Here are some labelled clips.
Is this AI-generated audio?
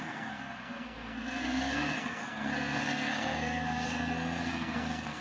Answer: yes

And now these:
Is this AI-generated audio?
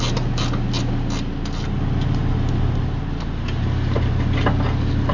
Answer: no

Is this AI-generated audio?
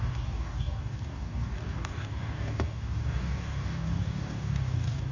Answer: yes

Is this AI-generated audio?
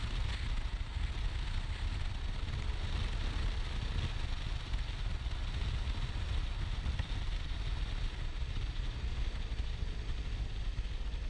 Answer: no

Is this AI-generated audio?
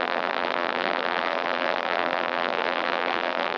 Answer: yes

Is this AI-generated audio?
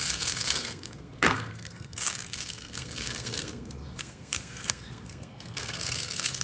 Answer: yes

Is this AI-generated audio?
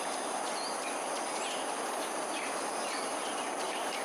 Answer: no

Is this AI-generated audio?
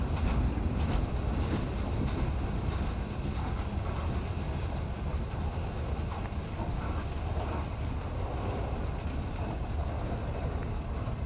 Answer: no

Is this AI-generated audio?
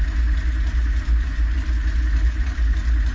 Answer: no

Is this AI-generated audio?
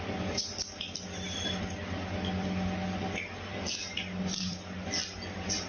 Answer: no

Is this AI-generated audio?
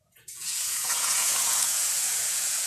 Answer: yes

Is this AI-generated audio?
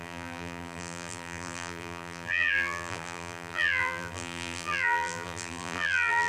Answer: yes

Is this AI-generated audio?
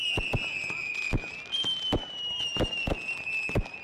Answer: no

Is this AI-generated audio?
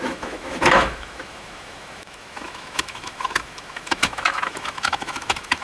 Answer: yes